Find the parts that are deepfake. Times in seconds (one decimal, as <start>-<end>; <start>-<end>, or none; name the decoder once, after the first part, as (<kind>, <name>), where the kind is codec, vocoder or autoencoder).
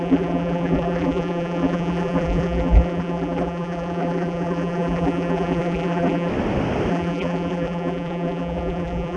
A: 0.0-6.3 (vocoder, BigVGAN v2); 6.9-9.2